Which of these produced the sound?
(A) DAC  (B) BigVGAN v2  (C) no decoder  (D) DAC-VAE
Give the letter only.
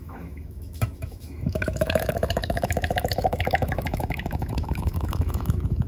D